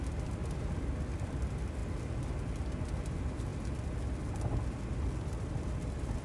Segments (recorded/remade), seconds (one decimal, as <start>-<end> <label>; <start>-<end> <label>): 0.0-0.4 remade; 0.4-1.3 recorded; 1.3-1.8 remade; 1.8-3.1 recorded; 3.1-6.2 remade